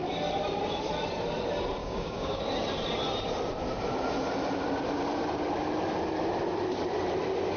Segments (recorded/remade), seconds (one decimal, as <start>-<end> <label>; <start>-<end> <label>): 0.0-1.8 recorded; 1.8-2.4 remade; 2.4-7.6 recorded